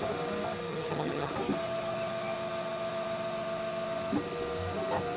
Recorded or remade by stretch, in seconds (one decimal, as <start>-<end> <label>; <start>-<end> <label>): 0.0-0.7 recorded; 0.7-1.3 remade; 1.3-5.2 recorded